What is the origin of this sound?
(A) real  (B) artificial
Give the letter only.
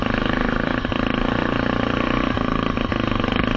A